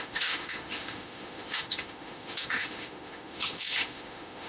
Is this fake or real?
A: fake